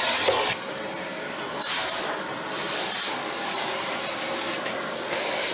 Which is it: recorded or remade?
remade